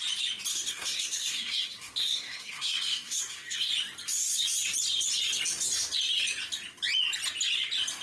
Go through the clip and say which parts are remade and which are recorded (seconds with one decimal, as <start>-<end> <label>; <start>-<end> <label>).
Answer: 0.0-0.5 recorded; 0.5-3.7 remade; 3.7-8.0 recorded